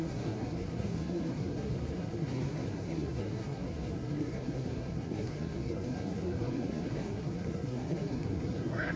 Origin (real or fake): fake